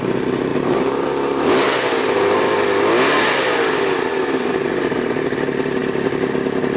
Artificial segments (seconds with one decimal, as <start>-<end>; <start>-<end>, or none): 0.5-1.5